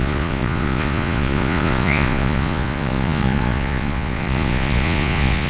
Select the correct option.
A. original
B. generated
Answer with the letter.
B